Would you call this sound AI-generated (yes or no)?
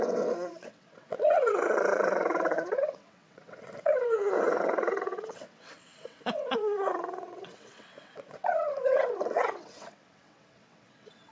yes